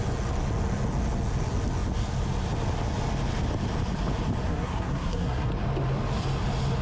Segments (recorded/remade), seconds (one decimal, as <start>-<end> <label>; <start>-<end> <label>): 0.0-4.5 recorded; 4.5-5.5 remade; 5.5-6.8 recorded